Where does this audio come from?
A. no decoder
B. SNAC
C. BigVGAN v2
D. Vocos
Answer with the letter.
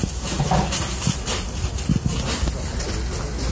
A